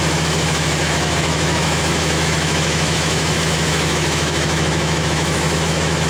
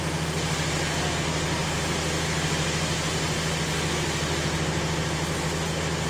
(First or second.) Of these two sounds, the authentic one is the second